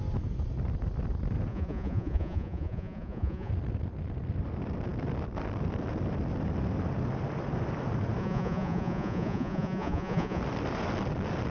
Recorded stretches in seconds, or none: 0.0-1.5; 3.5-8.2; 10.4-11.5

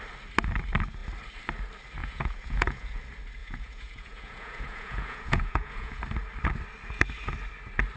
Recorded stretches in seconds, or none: 0.0-2.0; 3.0-3.4; 6.0-8.0

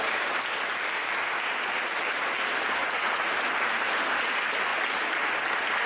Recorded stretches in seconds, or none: 0.0-2.8; 3.4-5.9

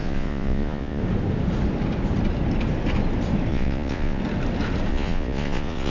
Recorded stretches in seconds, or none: 1.0-3.5; 4.2-4.9

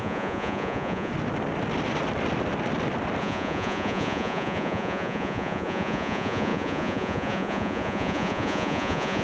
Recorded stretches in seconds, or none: 1.1-3.2

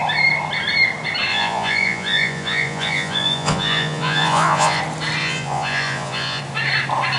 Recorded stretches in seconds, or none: 0.0-1.3; 4.8-5.2; 6.4-7.2